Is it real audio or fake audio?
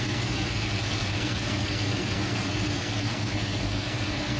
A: fake